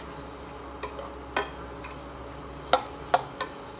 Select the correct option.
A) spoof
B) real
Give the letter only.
B